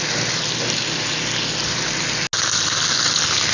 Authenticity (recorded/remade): recorded